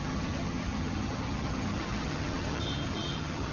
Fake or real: fake